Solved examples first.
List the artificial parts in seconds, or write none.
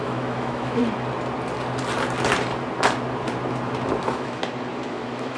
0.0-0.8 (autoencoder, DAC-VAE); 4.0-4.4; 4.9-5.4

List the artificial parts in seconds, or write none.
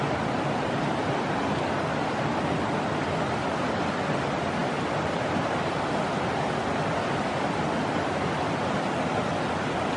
none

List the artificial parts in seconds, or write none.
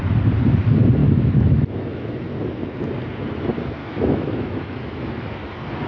1.0-2.1 (autoencoder, DAC-VAE); 3.8-5.1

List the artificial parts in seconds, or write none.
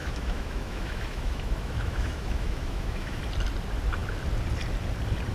0.0-3.2 (autoencoder, DAC-VAE)